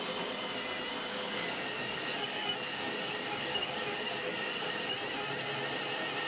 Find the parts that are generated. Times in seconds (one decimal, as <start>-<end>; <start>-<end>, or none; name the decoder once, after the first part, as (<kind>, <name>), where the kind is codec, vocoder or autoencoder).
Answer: 1.1-4.9 (codec, DAC)